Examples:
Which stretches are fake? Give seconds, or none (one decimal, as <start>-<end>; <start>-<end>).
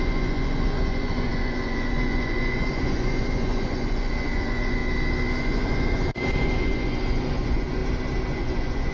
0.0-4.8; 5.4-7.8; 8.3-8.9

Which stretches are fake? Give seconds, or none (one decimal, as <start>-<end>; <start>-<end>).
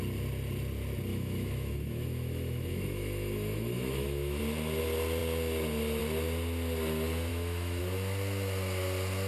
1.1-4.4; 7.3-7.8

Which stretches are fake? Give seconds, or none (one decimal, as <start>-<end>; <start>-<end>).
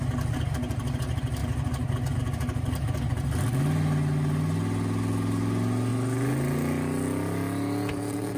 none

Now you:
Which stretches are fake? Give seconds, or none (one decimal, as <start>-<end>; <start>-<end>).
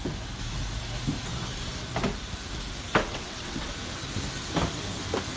3.1-3.7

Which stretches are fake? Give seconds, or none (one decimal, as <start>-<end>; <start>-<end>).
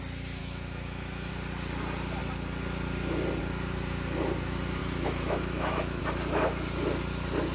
0.4-1.3; 4.8-6.0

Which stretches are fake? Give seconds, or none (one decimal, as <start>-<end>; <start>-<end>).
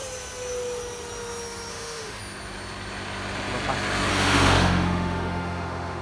1.7-2.2; 4.1-6.0